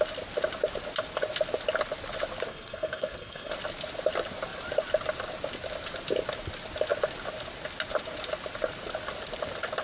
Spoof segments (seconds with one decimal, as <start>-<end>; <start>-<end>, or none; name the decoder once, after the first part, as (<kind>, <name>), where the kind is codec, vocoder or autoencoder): 2.5-3.5 (codec, SNAC)